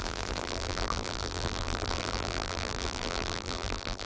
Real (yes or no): no